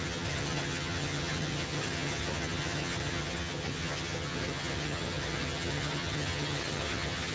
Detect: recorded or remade remade